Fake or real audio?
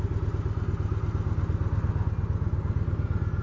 real